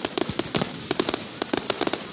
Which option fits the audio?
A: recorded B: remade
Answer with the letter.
A